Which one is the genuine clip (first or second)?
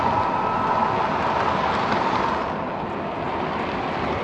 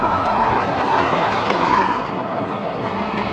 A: first